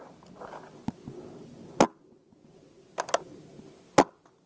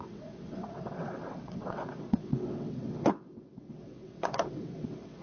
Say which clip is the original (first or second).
first